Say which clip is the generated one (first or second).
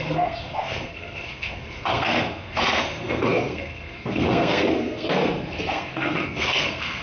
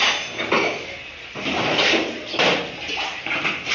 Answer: first